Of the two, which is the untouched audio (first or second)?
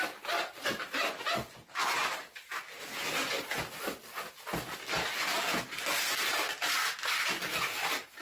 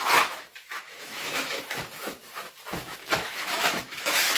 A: first